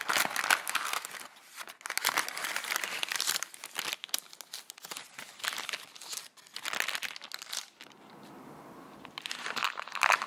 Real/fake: real